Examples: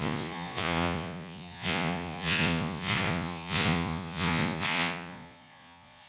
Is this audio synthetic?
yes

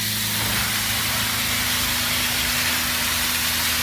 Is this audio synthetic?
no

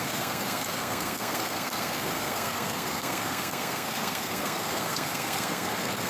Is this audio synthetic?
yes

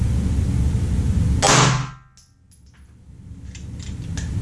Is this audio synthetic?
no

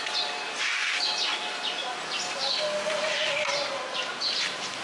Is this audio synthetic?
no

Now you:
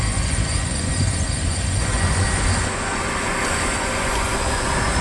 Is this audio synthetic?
yes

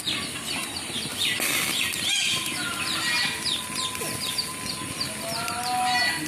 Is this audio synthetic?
no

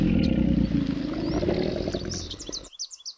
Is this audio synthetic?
no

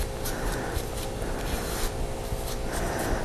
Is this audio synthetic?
no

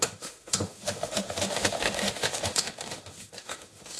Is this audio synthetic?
yes